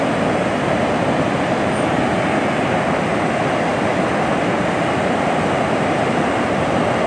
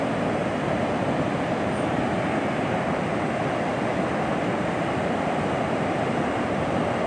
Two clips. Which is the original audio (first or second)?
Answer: first